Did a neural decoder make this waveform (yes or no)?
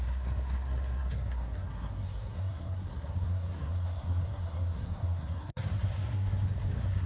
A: yes